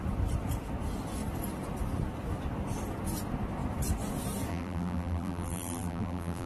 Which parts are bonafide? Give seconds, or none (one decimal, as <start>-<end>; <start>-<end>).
0.0-4.5